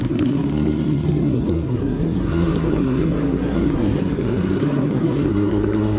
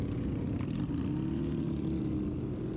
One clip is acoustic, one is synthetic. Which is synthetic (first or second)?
first